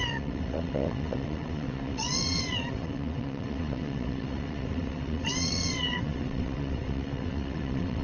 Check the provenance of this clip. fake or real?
fake